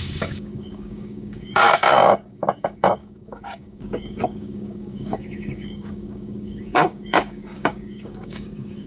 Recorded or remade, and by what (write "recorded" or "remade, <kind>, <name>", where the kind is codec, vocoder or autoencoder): remade, codec, DAC